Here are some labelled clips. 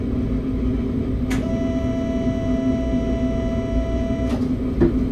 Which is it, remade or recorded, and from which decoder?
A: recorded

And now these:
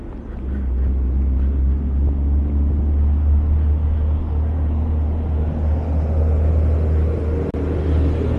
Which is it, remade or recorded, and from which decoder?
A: recorded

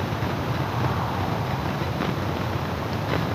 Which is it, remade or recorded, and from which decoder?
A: remade, vocoder, BigVGAN v2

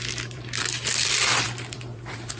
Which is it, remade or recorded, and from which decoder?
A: remade, vocoder, BigVGAN v2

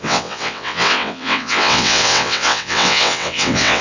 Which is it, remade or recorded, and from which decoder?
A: remade, vocoder, WaveNeXt